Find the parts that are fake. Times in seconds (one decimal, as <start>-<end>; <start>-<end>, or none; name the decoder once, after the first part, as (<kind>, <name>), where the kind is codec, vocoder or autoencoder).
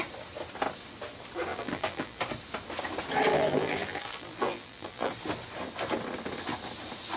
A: 1.5-2.2 (vocoder, BigVGAN v2); 3.3-5.1